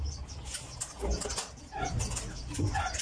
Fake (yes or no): no